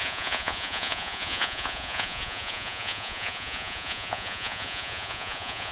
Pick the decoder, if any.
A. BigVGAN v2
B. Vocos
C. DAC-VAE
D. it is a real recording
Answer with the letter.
B